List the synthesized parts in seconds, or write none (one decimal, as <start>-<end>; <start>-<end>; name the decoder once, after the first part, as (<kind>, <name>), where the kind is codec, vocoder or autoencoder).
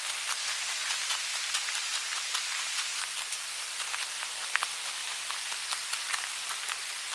2.5-3.8 (vocoder, BigVGAN v2)